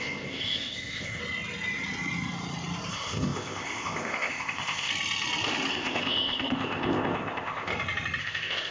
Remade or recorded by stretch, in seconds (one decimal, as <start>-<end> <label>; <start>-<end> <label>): 0.0-1.2 remade; 1.2-2.9 recorded; 2.9-4.9 remade; 4.9-5.7 recorded; 5.7-7.7 remade; 7.7-8.2 recorded; 8.2-8.7 remade